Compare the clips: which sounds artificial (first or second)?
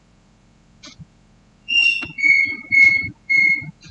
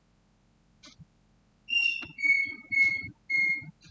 first